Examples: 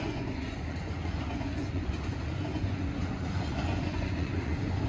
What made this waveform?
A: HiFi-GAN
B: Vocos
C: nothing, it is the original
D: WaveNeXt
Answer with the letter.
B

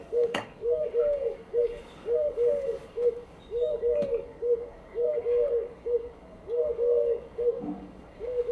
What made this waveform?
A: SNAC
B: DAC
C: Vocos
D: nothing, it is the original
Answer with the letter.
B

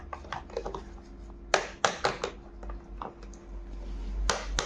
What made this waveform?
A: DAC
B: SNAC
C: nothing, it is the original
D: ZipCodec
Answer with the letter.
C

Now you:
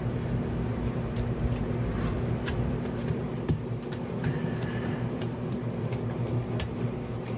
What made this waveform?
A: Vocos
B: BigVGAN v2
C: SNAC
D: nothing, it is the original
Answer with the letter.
B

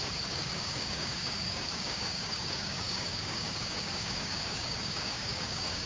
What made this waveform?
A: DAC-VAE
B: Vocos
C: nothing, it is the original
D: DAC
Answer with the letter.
D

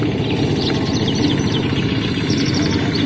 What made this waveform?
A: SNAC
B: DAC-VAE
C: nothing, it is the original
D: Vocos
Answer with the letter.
C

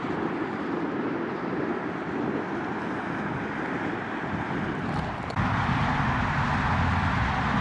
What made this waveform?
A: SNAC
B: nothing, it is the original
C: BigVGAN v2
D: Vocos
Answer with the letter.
B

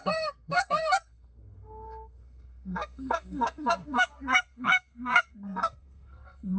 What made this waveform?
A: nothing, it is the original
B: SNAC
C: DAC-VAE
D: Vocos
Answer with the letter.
B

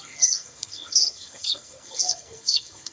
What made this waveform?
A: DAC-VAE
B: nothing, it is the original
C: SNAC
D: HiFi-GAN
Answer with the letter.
C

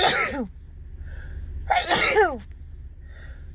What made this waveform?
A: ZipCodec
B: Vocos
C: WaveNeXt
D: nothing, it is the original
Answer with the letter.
D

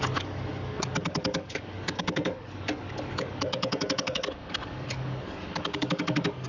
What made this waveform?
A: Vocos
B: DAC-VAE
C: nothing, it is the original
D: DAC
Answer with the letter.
D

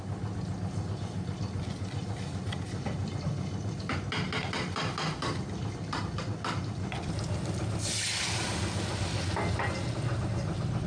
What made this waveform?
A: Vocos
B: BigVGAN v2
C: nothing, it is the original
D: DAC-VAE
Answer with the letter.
C